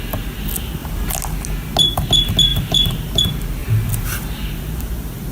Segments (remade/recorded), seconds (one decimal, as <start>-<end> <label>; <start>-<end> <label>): 0.0-2.5 recorded; 2.5-3.2 remade; 3.2-3.6 recorded; 3.6-5.3 remade